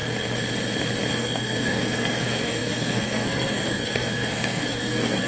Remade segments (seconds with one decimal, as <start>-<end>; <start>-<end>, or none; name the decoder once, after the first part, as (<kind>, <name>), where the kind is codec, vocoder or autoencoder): 1.1-5.3 (codec, SNAC)